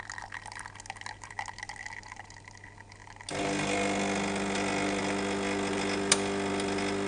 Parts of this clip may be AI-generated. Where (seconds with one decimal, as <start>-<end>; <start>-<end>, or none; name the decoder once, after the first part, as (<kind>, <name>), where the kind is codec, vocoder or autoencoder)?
none